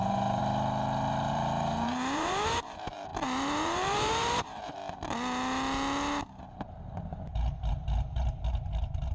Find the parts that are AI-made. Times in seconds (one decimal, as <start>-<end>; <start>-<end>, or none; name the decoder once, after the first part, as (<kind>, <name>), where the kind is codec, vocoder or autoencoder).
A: 0.0-0.4 (vocoder, BigVGAN v2); 1.3-4.8; 7.7-9.1